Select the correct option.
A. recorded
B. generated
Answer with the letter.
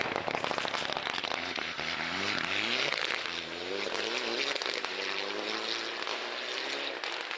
A